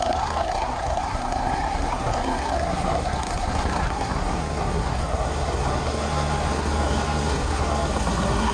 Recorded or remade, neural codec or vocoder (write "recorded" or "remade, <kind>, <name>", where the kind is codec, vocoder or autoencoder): remade, codec, SNAC